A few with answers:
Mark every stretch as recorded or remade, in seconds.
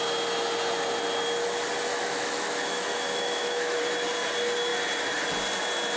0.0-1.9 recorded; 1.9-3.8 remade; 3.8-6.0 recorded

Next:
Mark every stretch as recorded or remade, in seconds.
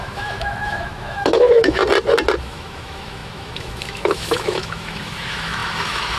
0.0-1.8 remade; 1.8-2.4 recorded; 2.4-6.2 remade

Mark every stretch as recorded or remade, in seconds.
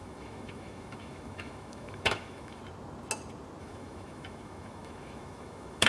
0.0-2.6 remade; 2.6-3.6 recorded; 3.6-5.9 remade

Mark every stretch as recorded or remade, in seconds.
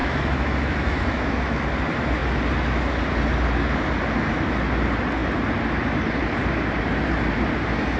0.0-1.6 remade; 1.6-8.0 recorded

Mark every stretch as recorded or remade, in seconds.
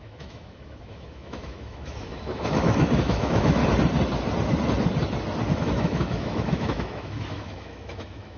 0.0-3.6 remade; 3.6-5.5 recorded; 5.5-8.4 remade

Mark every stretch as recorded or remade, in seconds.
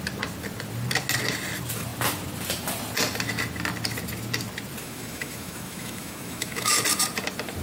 0.0-4.8 recorded; 4.8-6.7 remade; 6.7-7.6 recorded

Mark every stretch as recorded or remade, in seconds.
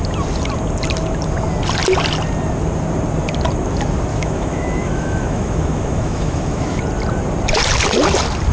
0.0-4.1 recorded; 4.1-6.8 remade; 6.8-8.5 recorded